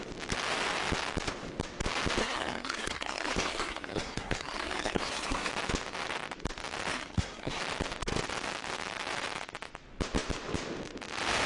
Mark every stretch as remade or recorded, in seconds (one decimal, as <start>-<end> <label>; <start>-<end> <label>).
0.0-2.2 recorded; 2.2-5.5 remade; 5.5-6.9 recorded; 6.9-7.6 remade; 7.6-11.5 recorded